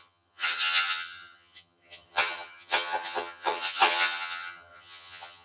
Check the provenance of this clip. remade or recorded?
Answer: remade